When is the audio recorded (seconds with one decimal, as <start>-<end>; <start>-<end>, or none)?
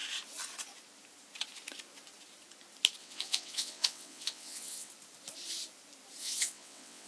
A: 0.0-3.0; 4.9-6.2